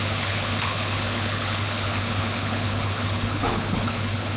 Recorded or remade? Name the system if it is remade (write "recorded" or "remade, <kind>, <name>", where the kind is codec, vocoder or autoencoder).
remade, codec, HILCodec